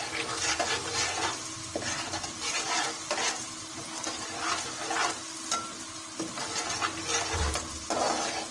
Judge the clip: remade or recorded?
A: recorded